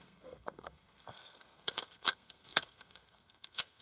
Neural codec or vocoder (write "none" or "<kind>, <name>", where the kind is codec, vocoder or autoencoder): codec, SNAC